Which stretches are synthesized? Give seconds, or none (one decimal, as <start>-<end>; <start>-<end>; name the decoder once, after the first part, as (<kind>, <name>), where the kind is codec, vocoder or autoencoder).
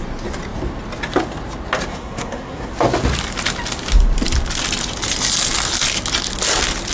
1.9-2.7 (codec, SNAC)